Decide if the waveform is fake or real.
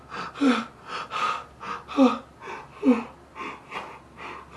real